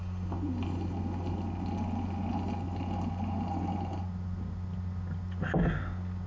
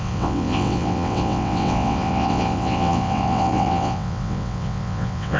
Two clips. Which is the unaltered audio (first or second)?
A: first